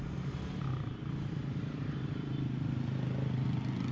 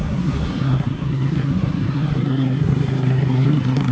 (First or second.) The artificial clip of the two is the second